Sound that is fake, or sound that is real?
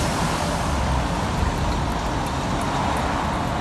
real